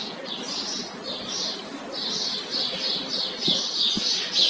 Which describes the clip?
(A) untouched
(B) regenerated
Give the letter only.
A